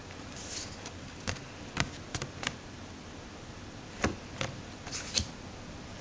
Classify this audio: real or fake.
real